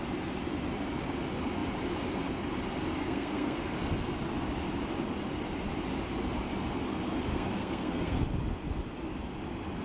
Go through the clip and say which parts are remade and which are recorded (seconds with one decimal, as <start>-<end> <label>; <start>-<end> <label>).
0.0-3.0 recorded; 3.0-3.6 remade; 3.6-7.3 recorded; 7.3-8.2 remade; 8.2-9.8 recorded